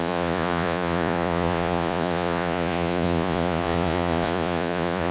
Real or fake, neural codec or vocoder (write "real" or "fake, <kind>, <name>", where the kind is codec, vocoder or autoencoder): fake, vocoder, Vocos